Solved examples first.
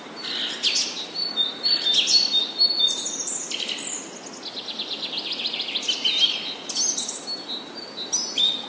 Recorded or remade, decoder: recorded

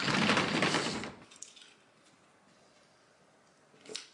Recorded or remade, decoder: recorded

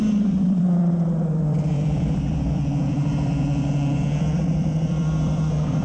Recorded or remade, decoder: remade, vocoder, BigVGAN v2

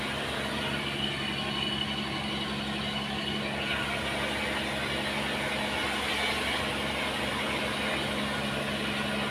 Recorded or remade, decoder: recorded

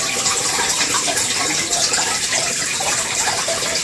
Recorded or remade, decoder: remade, vocoder, BigVGAN v2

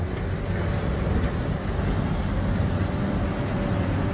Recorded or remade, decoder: recorded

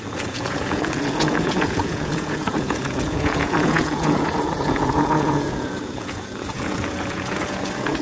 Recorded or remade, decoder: remade, vocoder, Vocos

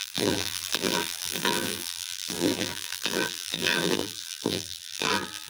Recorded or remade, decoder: remade, vocoder, BigVGAN v2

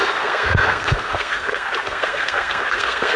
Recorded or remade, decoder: remade, codec, SNAC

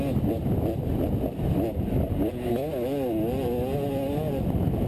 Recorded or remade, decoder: recorded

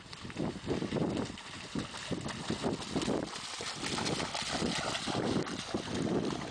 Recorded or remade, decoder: recorded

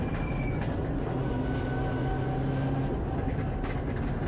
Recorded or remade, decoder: recorded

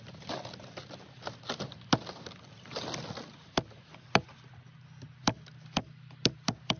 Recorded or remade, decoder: recorded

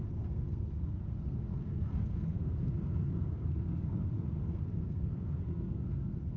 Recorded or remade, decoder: remade, codec, SNAC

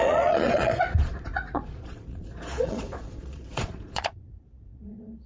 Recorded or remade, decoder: remade, vocoder, Vocos